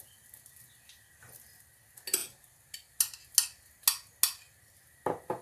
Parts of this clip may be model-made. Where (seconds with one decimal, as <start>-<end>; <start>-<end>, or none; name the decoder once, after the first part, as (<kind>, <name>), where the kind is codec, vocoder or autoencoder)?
none